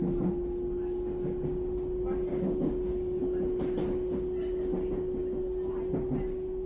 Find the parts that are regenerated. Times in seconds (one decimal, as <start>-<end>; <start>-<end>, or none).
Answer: 2.3-3.2